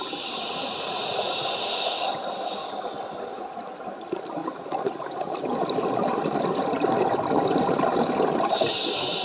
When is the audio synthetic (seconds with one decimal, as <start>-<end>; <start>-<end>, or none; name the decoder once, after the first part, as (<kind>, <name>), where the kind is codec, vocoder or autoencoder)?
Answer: 0.6-2.1 (vocoder, Vocos); 3.3-3.8; 4.4-5.2